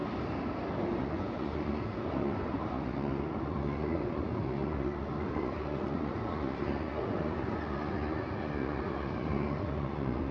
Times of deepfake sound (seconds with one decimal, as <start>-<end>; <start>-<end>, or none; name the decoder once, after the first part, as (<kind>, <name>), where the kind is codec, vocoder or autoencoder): 1.0-10.3 (vocoder, Vocos)